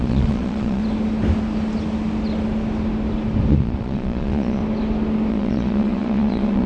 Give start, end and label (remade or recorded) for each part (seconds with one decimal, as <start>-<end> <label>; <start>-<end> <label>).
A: 0.0-0.8 remade; 0.8-3.5 recorded; 3.5-4.6 remade; 4.6-5.3 recorded; 5.3-6.7 remade